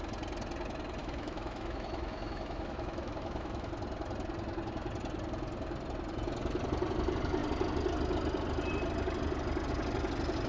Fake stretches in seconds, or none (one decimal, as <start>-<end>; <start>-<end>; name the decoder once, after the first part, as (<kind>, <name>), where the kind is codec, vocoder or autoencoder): 1.0-3.7 (autoencoder, DAC-VAE)